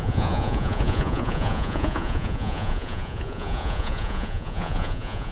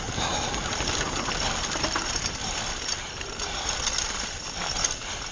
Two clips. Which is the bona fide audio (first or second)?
second